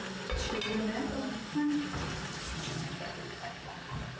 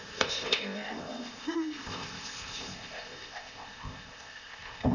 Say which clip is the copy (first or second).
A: second